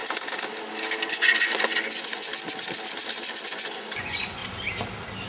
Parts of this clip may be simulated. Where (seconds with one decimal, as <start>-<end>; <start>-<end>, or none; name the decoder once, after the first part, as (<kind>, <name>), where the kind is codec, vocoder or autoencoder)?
1.1-2.3 (vocoder, Vocos); 3.4-4.4